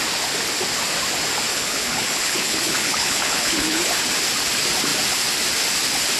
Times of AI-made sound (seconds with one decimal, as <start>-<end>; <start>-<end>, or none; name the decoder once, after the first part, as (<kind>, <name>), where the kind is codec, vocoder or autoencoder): 1.5-3.8 (codec, HILCodec)